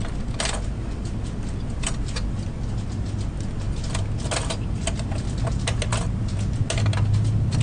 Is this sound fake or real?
real